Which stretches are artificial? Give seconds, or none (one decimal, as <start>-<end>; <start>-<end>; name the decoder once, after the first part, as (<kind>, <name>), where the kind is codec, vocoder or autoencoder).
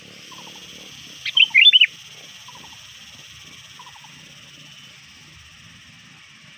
none